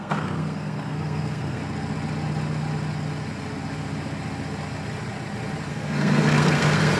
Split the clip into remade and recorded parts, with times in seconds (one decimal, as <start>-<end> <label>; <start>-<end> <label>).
0.0-1.6 remade; 1.6-5.7 recorded; 5.7-7.0 remade